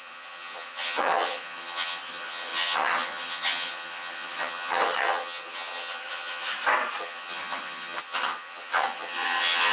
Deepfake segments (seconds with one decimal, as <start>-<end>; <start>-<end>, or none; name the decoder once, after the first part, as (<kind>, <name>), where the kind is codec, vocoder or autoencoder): 0.0-6.5 (vocoder, HiFi-GAN); 7.0-9.7